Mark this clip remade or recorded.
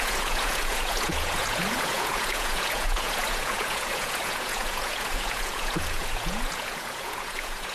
remade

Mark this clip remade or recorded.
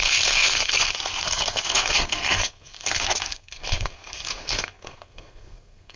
remade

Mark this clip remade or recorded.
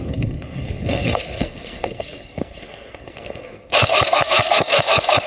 remade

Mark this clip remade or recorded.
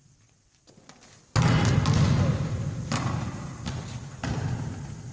recorded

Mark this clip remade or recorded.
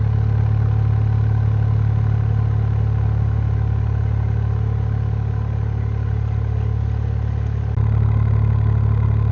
recorded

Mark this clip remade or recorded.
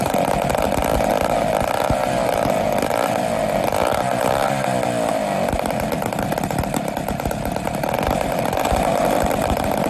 recorded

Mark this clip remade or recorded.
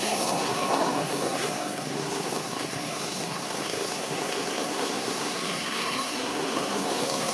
remade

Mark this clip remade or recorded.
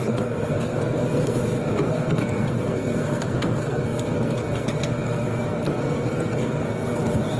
remade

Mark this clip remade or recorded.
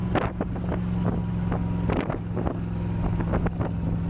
recorded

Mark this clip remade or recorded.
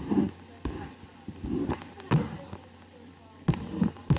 recorded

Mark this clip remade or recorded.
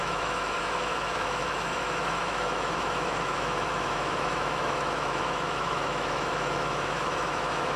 remade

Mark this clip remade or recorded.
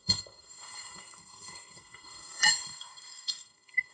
remade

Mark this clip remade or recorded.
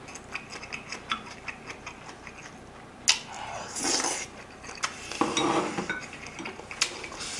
recorded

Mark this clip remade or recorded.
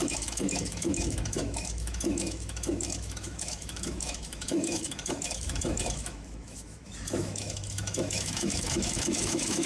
remade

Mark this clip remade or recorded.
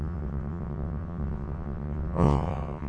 remade